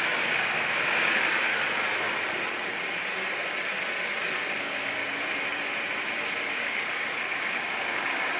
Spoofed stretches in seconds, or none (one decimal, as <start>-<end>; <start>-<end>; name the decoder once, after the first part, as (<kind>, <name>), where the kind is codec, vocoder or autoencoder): 0.0-1.5 (codec, DAC); 4.6-5.0; 6.4-8.4